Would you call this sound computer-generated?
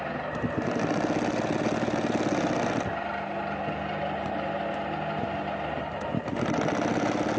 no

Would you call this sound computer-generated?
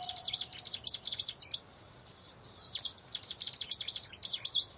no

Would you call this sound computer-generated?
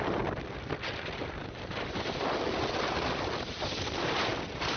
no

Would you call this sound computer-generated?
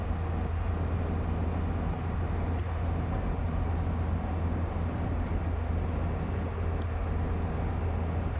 no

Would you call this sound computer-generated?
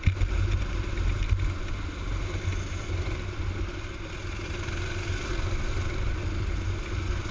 no